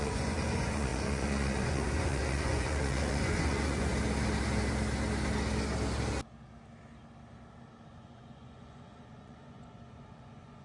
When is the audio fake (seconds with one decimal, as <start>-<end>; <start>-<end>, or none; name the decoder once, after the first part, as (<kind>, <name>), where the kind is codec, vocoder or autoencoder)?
0.0-3.9 (vocoder, Vocos); 7.9-10.6